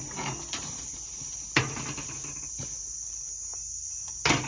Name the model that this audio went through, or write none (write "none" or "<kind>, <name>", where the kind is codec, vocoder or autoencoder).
none